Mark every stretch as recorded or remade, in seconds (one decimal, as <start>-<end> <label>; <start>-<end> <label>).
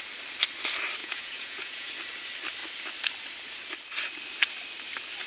0.0-1.0 recorded; 1.0-1.9 remade; 1.9-5.3 recorded